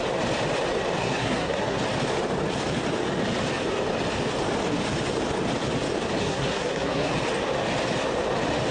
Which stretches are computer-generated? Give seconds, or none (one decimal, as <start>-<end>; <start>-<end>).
1.0-1.8; 6.2-7.1